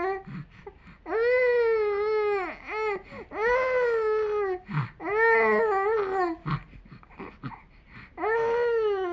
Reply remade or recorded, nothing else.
recorded